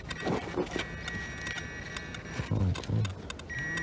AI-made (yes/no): no